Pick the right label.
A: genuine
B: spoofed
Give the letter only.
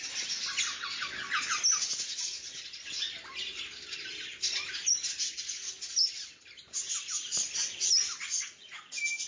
A